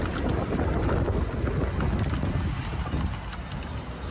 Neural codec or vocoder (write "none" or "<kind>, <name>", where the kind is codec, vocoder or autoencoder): none